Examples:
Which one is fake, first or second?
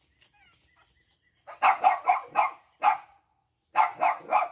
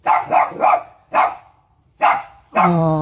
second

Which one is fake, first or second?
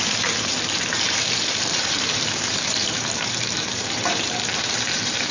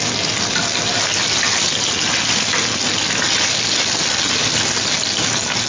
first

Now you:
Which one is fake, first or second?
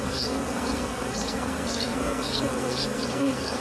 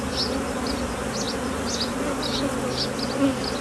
first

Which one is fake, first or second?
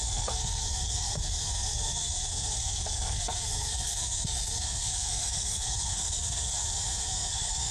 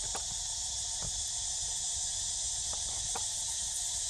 first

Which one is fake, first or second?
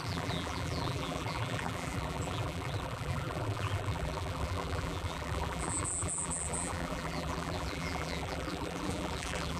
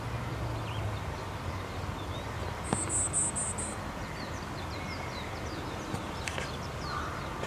first